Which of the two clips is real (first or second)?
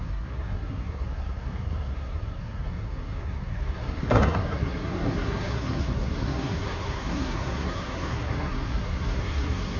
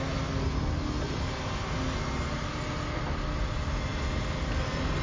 second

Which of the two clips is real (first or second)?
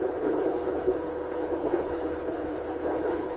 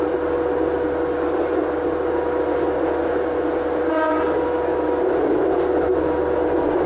second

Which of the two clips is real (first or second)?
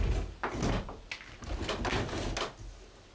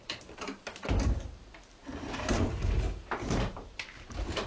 first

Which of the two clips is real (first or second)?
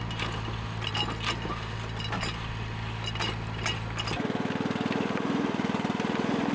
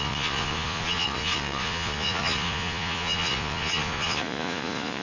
first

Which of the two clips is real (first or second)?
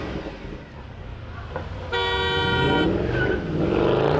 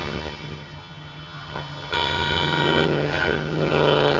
first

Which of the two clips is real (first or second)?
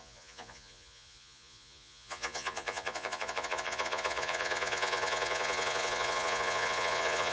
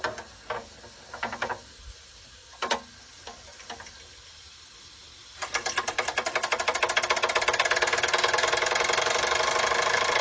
second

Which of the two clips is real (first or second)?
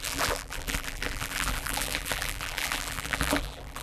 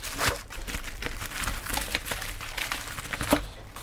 second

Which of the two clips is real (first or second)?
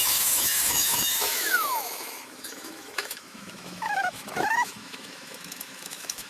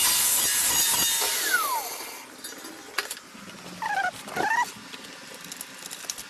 second